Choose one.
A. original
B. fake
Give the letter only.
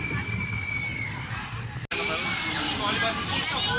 A